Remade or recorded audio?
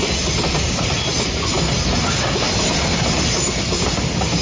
recorded